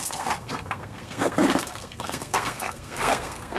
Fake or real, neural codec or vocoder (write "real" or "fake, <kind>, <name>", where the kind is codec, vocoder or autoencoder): fake, codec, SNAC